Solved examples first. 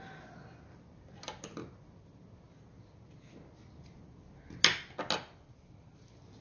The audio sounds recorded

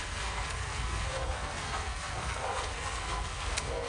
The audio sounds remade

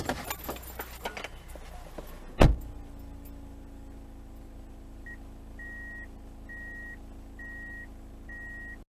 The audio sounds recorded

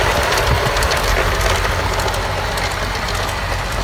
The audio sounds recorded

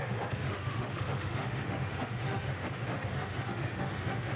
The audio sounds remade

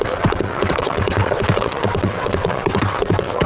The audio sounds remade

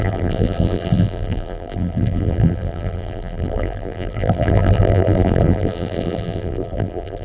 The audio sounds remade